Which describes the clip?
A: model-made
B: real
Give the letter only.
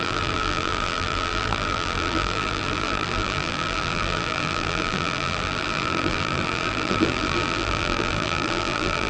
A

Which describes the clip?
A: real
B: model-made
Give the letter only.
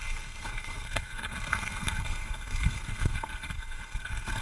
B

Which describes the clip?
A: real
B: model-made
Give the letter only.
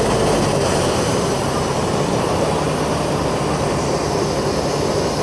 A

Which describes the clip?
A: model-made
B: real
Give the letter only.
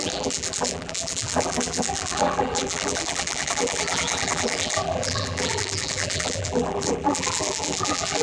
A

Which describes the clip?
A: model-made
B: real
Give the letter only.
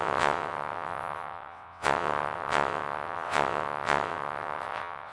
A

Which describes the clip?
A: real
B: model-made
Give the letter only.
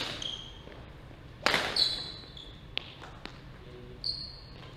A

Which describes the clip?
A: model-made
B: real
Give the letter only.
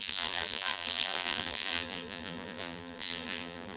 A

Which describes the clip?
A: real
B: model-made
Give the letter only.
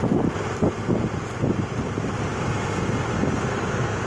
A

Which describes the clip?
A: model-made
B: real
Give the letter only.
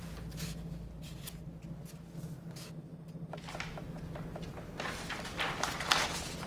B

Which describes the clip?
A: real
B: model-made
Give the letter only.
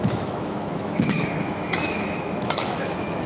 B